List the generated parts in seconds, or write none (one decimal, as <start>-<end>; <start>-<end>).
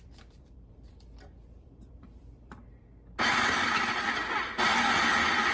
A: 0.0-2.6; 3.3-4.5